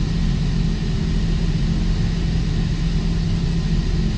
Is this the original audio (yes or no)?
yes